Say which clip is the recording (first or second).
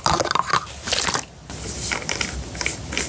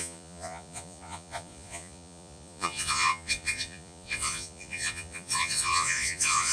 first